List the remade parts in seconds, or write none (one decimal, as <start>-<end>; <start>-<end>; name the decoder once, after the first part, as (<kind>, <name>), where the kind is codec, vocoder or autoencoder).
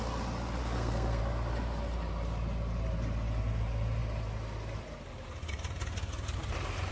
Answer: 0.6-1.2 (codec, SNAC)